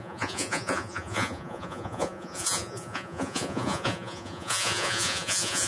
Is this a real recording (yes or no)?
no